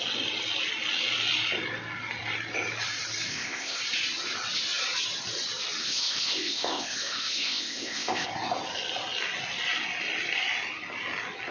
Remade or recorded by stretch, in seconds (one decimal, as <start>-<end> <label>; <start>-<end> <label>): 0.0-3.3 recorded; 3.3-3.8 remade; 3.8-5.8 recorded; 5.8-8.3 remade; 8.3-11.5 recorded